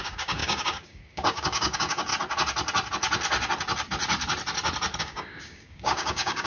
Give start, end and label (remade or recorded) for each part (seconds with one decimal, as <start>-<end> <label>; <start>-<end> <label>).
0.0-2.1 remade; 2.1-5.0 recorded; 5.0-6.5 remade